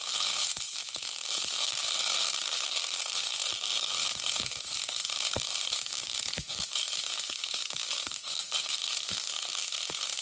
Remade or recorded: remade